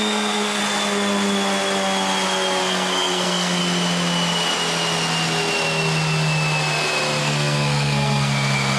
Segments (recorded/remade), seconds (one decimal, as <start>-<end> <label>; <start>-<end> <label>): 0.0-0.6 remade; 0.6-2.6 recorded; 2.6-3.6 remade; 3.6-7.2 recorded; 7.2-8.8 remade